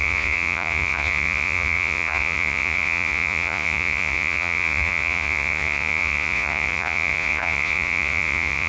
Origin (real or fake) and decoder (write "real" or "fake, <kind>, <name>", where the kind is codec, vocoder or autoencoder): fake, vocoder, Vocos